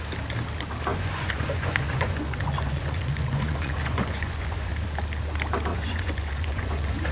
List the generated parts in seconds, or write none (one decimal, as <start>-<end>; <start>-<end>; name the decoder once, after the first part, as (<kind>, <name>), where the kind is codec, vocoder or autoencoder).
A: 0.9-4.7 (vocoder, Vocos); 5.7-7.1